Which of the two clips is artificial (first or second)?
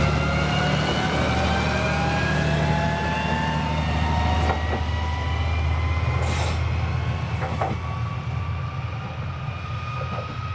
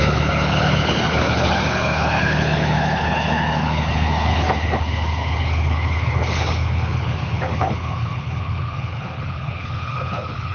second